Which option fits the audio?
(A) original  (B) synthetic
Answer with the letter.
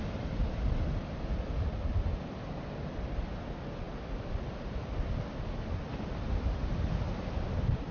A